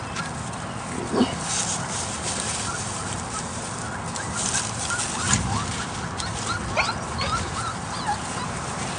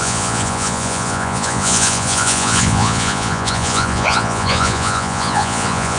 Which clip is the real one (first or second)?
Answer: first